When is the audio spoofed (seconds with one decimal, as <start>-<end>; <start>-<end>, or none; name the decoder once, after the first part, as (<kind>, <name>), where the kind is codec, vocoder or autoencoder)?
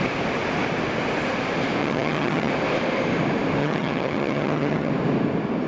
1.8-2.5 (vocoder, HiFi-GAN); 3.6-4.9